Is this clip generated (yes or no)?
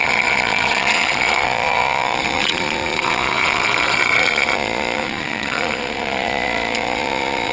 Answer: yes